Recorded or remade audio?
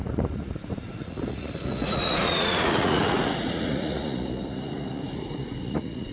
remade